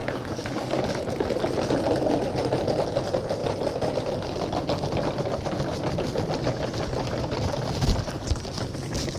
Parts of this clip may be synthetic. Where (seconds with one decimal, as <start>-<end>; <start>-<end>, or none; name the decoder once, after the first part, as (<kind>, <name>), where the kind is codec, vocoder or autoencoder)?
0.0-0.8 (codec, DAC)